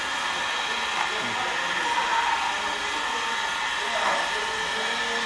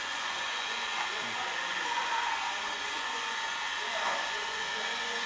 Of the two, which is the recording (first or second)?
first